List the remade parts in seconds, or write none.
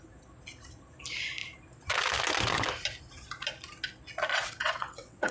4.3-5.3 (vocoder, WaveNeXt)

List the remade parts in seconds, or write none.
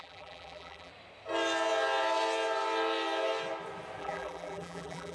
0.0-0.9 (vocoder, BigVGAN v2); 4.0-5.1